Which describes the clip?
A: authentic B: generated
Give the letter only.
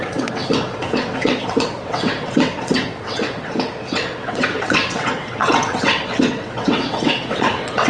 B